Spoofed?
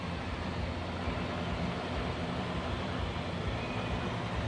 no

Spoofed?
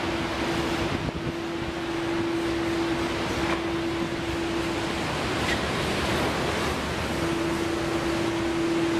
no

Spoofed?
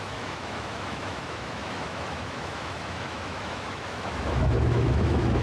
yes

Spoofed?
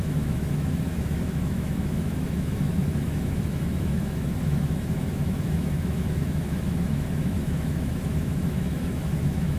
yes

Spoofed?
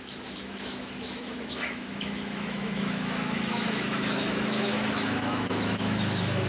yes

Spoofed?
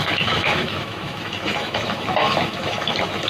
yes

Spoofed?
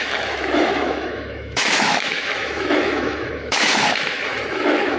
yes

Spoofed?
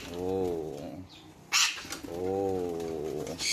no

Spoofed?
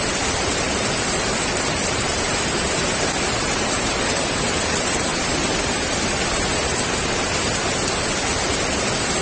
no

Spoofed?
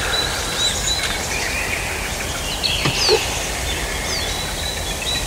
no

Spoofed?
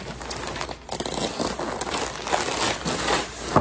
no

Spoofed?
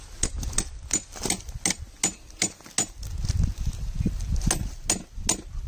no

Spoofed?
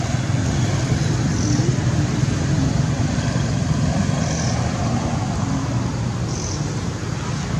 no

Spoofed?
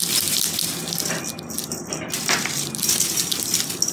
no